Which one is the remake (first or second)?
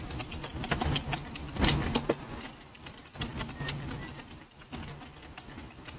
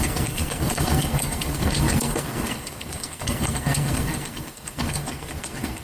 second